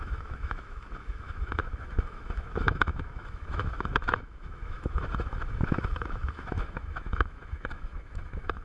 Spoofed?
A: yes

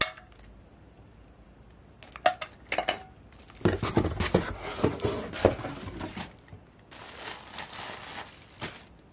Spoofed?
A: no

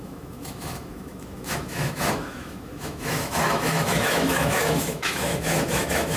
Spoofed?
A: yes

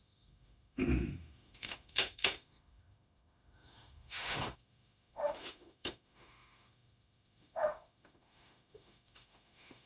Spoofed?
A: yes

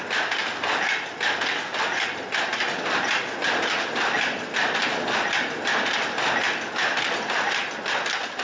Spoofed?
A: no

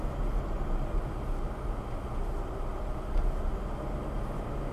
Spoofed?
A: no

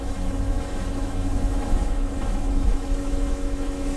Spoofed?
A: yes